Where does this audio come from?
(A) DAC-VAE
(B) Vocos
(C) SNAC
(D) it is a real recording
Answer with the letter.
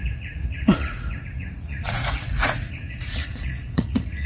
B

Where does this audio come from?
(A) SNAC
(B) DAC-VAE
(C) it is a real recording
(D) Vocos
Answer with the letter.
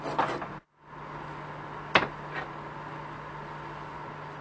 C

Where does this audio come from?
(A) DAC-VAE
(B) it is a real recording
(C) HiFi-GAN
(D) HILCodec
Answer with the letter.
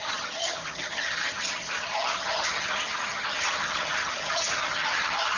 C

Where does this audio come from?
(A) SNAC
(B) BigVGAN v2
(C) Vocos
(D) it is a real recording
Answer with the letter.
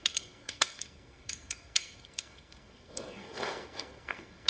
A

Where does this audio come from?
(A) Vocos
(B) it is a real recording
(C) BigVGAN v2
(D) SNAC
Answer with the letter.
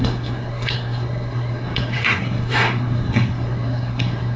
D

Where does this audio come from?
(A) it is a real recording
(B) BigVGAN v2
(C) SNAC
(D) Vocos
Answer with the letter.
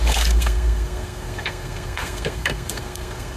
C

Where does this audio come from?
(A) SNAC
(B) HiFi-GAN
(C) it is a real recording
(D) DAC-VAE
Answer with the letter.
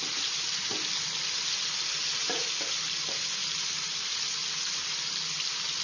C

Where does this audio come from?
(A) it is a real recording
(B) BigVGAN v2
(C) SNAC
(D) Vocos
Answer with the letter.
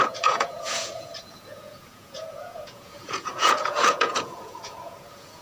D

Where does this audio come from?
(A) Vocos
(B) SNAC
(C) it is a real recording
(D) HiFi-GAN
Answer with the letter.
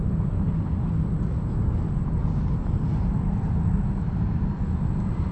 C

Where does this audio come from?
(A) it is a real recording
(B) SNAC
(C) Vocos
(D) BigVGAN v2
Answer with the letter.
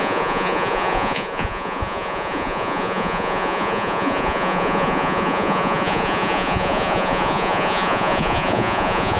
C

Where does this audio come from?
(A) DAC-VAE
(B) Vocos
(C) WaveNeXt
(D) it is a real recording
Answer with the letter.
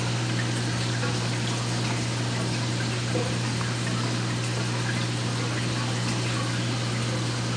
D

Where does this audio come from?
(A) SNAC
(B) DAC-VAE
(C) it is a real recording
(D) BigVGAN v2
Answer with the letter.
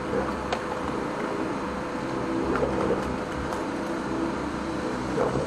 D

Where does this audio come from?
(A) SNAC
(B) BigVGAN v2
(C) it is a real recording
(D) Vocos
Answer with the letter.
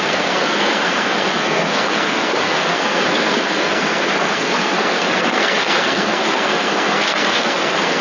A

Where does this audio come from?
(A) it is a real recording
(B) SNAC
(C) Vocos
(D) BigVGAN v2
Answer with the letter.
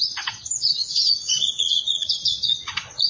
C